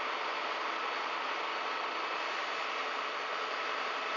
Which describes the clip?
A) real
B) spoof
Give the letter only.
A